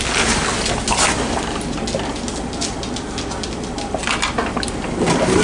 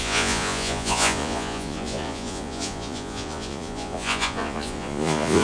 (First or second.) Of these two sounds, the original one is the first